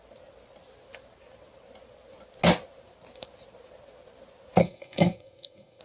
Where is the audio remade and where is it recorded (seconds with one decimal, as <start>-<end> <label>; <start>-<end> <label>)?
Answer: 0.0-4.6 recorded; 4.6-5.8 remade